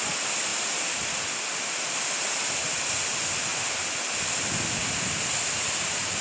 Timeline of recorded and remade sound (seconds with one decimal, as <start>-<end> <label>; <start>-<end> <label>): 0.0-0.5 recorded; 0.5-1.3 remade; 1.3-6.2 recorded